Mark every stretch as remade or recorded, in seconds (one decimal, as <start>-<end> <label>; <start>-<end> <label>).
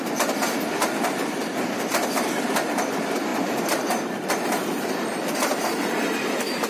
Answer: 0.0-6.7 recorded